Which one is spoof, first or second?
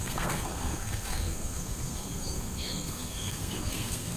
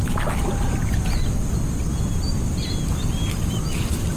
first